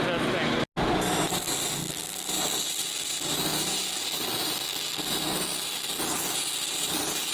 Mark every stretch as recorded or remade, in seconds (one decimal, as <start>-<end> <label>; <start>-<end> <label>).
0.0-7.3 recorded